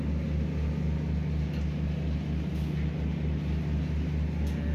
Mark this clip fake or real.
real